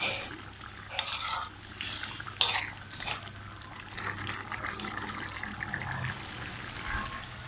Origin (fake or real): real